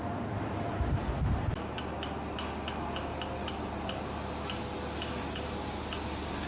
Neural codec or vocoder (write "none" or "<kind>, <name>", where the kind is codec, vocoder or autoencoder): none